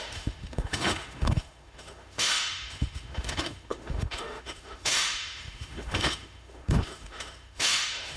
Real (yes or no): no